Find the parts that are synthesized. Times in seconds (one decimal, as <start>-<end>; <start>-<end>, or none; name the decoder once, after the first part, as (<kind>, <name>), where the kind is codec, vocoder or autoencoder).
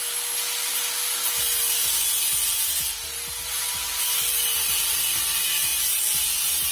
none